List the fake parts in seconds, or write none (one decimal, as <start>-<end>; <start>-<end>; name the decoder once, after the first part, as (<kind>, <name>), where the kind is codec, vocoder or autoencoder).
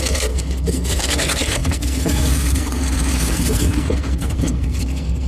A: 0.0-5.3 (codec, SNAC)